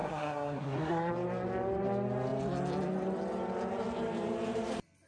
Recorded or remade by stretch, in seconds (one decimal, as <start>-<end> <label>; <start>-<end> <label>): 0.0-1.1 remade; 1.1-5.1 recorded